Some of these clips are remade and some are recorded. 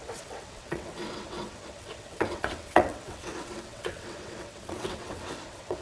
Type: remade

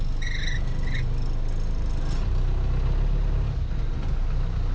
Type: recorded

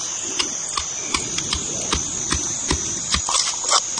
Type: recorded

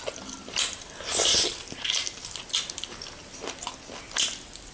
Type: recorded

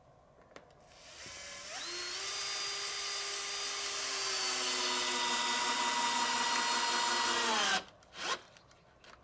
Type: recorded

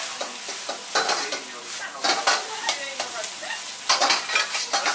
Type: recorded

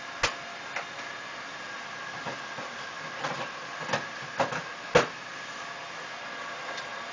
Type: recorded